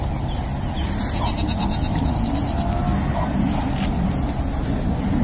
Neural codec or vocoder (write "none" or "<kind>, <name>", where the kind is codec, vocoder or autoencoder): none